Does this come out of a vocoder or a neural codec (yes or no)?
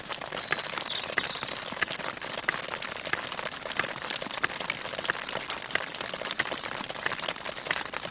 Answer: no